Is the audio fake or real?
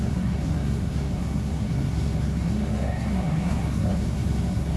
fake